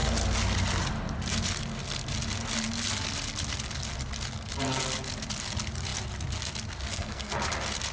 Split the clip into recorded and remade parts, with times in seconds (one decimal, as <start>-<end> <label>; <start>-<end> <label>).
0.0-6.9 recorded; 6.9-7.5 remade; 7.5-7.9 recorded